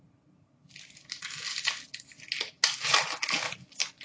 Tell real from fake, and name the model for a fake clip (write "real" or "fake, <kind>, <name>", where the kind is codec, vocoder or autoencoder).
real